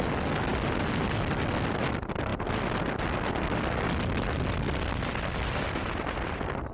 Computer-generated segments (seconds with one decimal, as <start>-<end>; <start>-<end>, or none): none